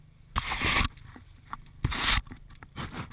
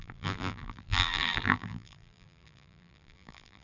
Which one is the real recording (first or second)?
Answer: first